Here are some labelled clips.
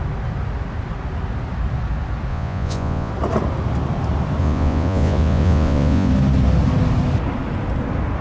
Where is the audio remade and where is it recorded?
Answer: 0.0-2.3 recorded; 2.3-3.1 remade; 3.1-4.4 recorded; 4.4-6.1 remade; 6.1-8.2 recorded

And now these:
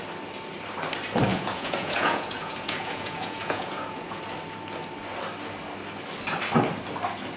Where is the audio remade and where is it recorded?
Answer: 0.0-1.3 recorded; 1.3-4.2 remade; 4.2-7.4 recorded

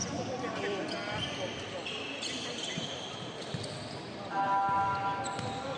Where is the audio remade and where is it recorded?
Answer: 0.0-5.8 recorded